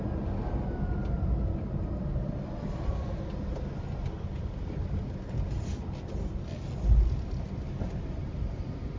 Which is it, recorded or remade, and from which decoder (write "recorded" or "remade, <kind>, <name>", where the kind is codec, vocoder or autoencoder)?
recorded